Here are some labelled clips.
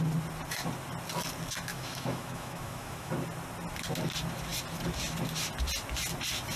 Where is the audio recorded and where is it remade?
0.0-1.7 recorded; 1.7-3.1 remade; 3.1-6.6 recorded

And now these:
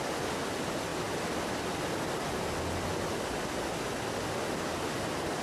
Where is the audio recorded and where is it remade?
0.0-5.4 recorded

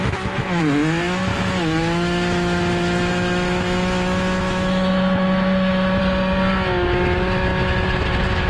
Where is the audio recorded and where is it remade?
0.0-0.6 remade; 0.6-1.3 recorded; 1.3-6.0 remade; 6.0-8.5 recorded

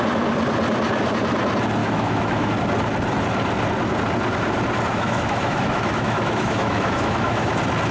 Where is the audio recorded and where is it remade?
0.0-1.8 recorded; 1.8-2.5 remade; 2.5-4.9 recorded; 4.9-7.5 remade; 7.5-7.9 recorded

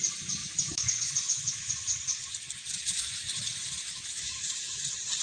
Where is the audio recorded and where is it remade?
0.0-0.4 recorded; 0.4-1.7 remade; 1.7-3.8 recorded; 3.8-4.8 remade; 4.8-5.2 recorded

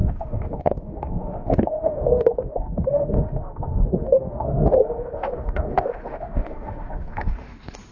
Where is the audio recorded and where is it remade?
0.0-7.9 remade

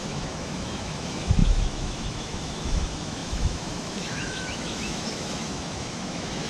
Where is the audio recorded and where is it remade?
0.0-6.5 remade